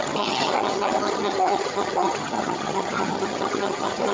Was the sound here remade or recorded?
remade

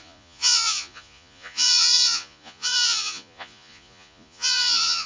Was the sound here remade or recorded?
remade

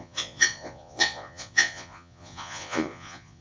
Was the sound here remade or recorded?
remade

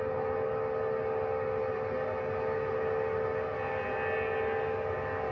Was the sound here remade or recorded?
recorded